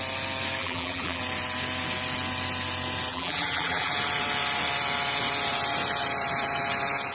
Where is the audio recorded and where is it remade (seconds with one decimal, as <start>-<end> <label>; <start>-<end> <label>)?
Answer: 0.0-0.6 recorded; 0.6-1.2 remade; 1.2-3.1 recorded; 3.1-3.9 remade; 3.9-7.1 recorded